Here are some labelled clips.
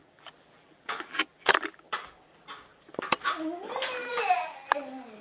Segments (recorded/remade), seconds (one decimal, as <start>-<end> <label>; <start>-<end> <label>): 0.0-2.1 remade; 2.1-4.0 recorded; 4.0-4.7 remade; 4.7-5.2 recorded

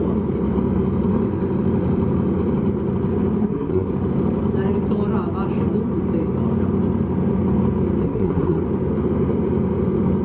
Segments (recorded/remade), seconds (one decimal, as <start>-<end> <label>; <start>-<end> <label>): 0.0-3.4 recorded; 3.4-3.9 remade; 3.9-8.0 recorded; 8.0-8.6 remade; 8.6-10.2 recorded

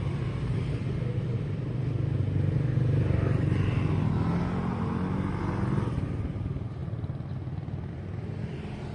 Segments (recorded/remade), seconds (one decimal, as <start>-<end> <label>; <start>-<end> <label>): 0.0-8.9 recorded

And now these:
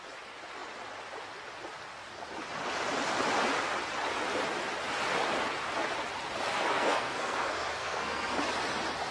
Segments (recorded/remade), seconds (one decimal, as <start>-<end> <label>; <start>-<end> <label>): 0.0-6.5 recorded; 6.5-8.4 remade; 8.4-9.1 recorded

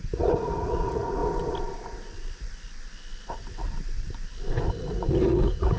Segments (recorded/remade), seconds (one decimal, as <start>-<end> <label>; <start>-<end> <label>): 0.0-1.2 remade; 1.2-4.7 recorded; 4.7-5.8 remade

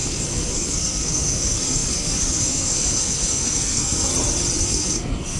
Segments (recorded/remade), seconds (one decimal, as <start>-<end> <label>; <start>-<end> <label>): 0.0-4.1 remade; 4.1-4.6 recorded; 4.6-5.4 remade

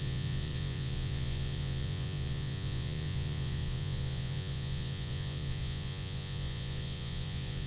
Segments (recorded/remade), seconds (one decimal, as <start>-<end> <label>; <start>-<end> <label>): 0.0-7.7 remade